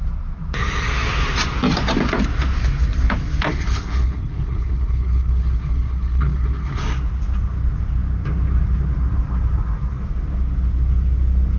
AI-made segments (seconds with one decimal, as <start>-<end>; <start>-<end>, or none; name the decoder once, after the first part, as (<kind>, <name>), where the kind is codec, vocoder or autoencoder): 3.5-6.8 (codec, HILCodec)